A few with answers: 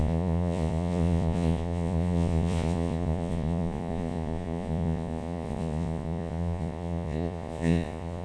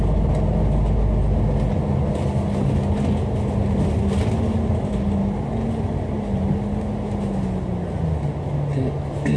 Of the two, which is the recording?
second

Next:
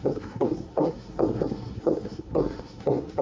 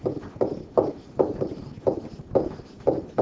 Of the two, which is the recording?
second